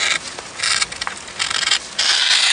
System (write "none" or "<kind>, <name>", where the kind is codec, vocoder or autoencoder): none